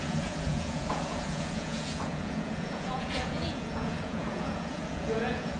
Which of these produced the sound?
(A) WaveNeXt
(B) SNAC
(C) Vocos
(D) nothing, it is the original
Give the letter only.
C